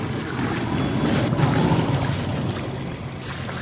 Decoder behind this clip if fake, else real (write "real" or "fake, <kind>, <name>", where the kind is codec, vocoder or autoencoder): real